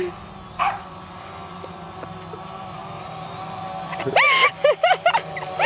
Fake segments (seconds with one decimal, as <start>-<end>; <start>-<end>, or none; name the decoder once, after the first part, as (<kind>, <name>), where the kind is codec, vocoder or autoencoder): none

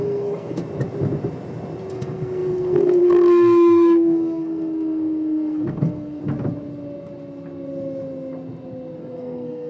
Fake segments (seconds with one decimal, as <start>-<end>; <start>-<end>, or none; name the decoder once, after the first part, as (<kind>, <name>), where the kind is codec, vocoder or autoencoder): 0.0-0.6 (codec, SNAC); 1.9-6.2; 9.0-9.7